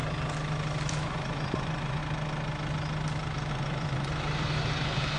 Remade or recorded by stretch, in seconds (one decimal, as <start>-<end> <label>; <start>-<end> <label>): 0.0-1.0 recorded; 1.0-2.0 remade; 2.0-3.5 recorded; 3.5-4.1 remade; 4.1-5.2 recorded